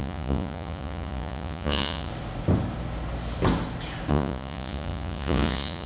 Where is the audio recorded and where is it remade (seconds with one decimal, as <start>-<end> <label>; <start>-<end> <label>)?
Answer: 0.0-2.1 remade; 2.1-4.1 recorded; 4.1-5.9 remade